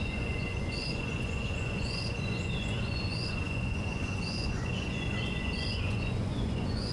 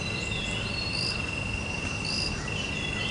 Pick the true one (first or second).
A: second